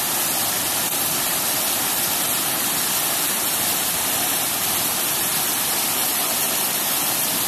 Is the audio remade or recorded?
recorded